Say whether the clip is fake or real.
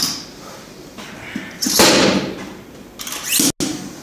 real